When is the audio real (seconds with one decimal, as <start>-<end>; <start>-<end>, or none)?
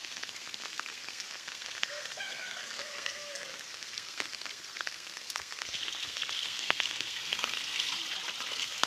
7.9-8.5